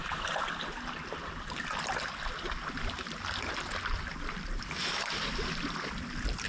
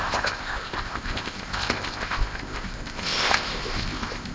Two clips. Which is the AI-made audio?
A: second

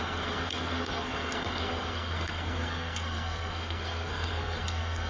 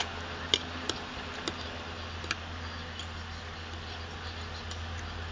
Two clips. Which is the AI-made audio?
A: first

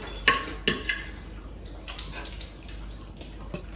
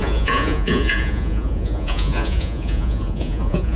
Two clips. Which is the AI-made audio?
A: second